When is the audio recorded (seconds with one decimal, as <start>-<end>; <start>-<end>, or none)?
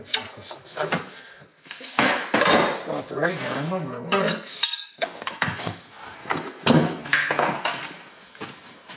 2.2-3.0